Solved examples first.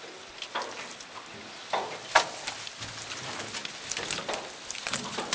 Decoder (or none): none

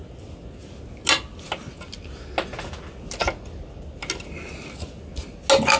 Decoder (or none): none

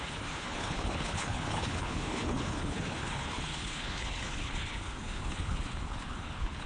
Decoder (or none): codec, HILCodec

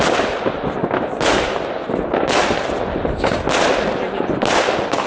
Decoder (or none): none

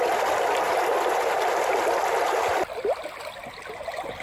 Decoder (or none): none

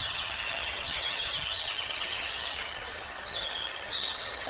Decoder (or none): vocoder, HiFi-GAN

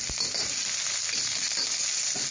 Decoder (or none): none